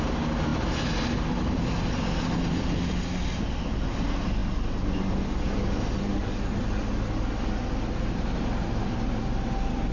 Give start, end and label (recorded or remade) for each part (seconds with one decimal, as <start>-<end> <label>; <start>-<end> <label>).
0.0-9.9 recorded